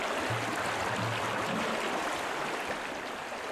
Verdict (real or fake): real